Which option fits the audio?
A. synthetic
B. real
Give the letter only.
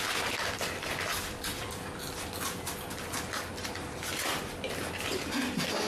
B